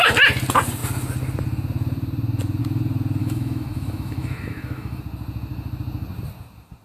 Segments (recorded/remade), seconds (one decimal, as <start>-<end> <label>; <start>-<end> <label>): 0.0-3.2 recorded; 3.2-5.0 remade; 5.0-6.8 recorded